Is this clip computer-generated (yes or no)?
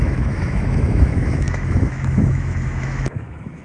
yes